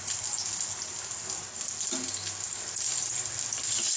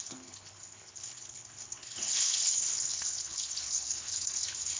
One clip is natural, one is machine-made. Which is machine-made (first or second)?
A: second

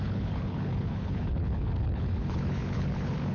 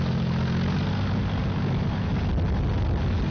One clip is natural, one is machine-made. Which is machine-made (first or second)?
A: first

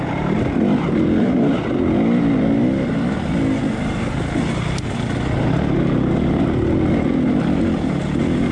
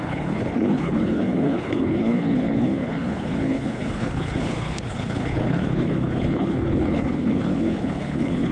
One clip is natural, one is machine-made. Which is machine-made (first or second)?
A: second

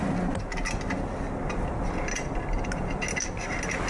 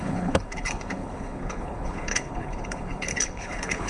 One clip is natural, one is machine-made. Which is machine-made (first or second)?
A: second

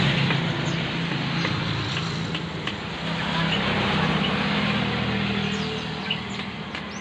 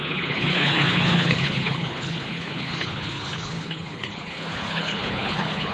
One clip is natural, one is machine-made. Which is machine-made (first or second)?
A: second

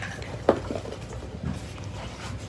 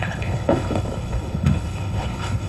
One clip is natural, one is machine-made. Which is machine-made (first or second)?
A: second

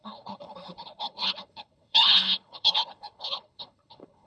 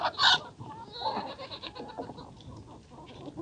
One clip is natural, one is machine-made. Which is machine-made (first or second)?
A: first